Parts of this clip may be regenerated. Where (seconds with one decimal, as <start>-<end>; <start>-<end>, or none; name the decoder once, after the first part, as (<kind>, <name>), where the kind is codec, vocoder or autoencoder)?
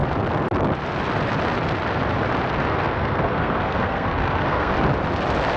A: 2.7-4.7 (codec, SNAC)